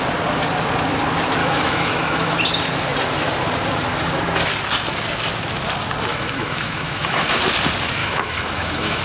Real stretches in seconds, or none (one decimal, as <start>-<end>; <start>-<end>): 0.0-1.4; 2.3-6.1; 7.4-8.0